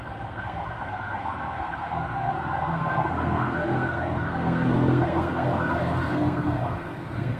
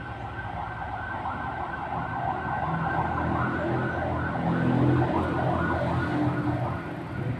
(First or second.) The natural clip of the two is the second